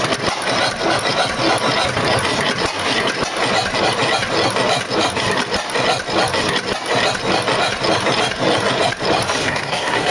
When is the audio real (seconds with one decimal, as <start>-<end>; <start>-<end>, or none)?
0.0-9.4

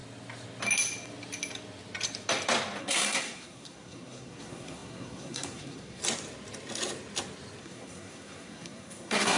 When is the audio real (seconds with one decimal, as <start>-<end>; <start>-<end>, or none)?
0.0-2.8; 6.0-7.6

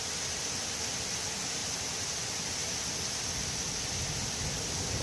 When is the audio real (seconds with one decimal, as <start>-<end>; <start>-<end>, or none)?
0.0-5.0

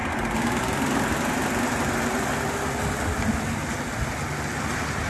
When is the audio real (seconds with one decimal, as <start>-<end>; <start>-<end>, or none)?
0.0-5.1